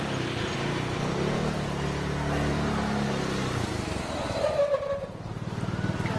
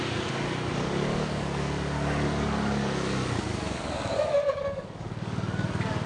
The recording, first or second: first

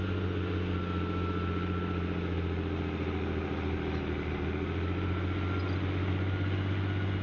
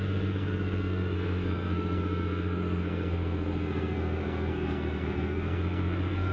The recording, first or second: first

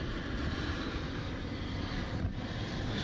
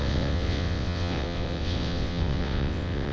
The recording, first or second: first